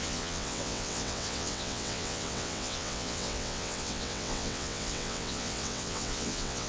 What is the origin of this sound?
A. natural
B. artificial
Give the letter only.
B